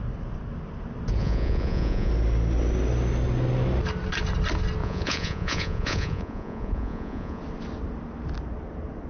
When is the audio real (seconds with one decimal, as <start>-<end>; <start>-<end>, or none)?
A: 0.0-1.2; 2.1-4.8; 7.4-9.1